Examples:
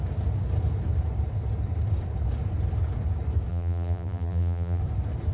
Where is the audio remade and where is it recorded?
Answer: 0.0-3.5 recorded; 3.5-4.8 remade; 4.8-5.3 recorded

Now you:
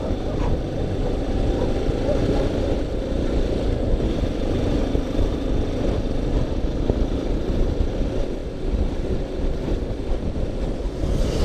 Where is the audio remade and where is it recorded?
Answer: 0.0-8.4 remade; 8.4-9.2 recorded; 9.2-11.4 remade